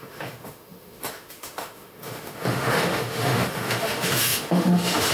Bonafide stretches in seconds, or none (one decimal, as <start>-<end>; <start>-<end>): none